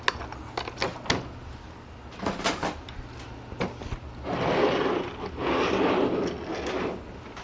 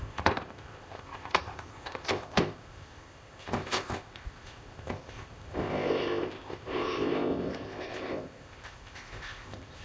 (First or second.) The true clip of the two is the first